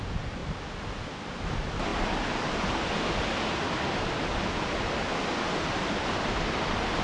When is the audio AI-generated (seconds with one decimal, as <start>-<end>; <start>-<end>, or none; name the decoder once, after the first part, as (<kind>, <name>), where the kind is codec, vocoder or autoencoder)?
none